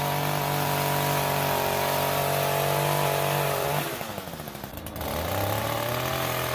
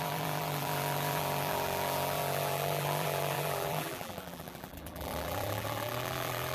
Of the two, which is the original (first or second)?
first